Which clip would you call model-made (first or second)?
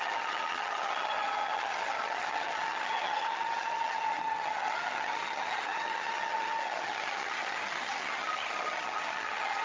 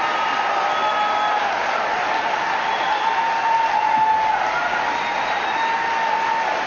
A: first